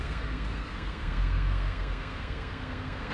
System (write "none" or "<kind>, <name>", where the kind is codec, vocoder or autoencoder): codec, SNAC